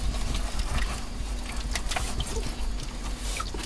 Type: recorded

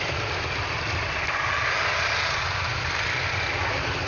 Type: recorded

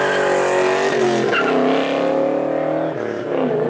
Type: recorded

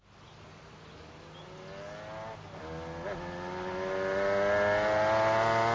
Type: recorded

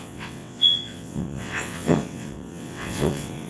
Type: remade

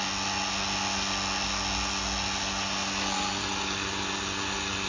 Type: recorded